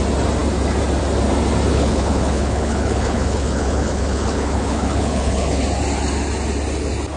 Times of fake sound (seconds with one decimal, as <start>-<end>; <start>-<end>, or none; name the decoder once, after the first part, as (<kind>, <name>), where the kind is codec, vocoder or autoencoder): 1.7-5.6 (codec, HILCodec)